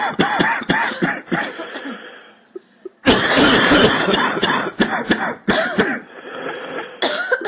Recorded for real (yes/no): yes